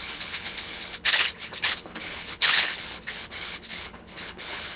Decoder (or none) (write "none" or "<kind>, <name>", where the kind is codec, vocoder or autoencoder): codec, HILCodec